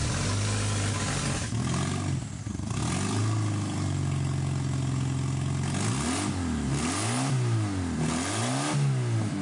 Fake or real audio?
real